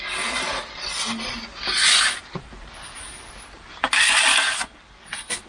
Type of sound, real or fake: real